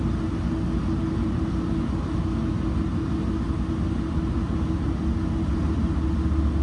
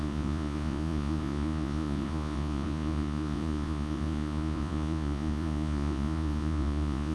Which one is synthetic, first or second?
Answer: second